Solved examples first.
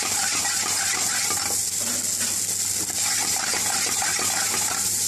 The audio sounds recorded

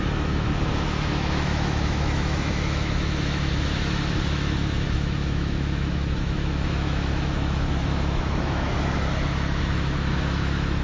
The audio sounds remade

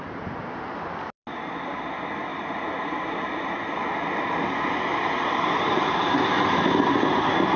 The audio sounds recorded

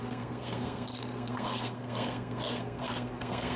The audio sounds remade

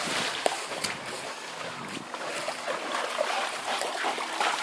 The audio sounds recorded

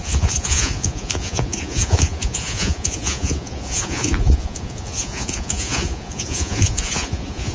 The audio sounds remade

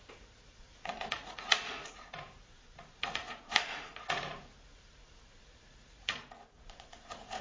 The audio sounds remade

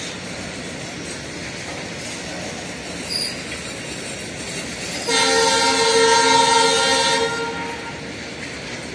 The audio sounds recorded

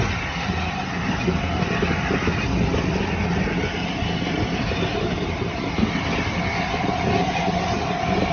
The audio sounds recorded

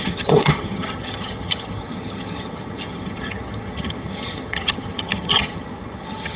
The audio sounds remade